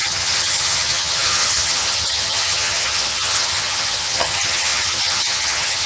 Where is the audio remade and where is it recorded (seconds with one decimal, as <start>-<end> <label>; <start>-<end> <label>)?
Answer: 0.0-5.9 remade